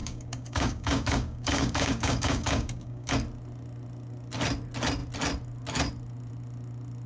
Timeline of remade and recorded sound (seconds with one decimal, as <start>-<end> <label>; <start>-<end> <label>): 0.0-3.1 remade; 3.1-7.1 recorded